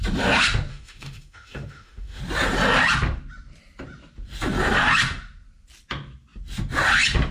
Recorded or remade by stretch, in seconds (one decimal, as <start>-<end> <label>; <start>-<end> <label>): 0.0-0.7 recorded; 0.7-2.2 remade; 2.2-7.3 recorded